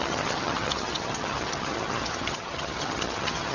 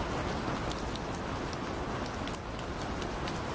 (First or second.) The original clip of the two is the second